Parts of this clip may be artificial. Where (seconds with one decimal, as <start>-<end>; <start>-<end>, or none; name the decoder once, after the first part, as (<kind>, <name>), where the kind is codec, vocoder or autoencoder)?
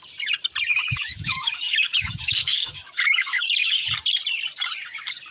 0.7-3.9 (autoencoder, DAC-VAE)